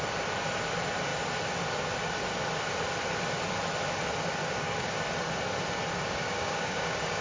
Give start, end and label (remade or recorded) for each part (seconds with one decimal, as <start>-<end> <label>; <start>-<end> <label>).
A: 0.0-4.4 recorded; 4.4-5.0 remade; 5.0-5.9 recorded; 5.9-7.2 remade